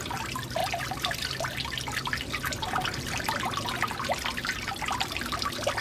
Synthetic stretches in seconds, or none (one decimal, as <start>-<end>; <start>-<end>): 0.0-0.6; 4.1-5.8